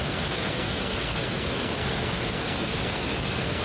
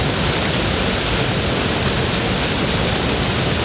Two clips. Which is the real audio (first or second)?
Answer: second